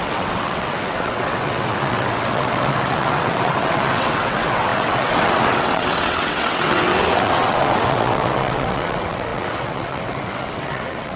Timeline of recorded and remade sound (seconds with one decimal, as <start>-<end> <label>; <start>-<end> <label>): 0.0-11.2 remade